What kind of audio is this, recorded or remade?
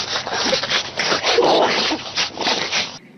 recorded